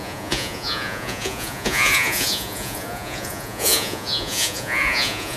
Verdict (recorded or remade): remade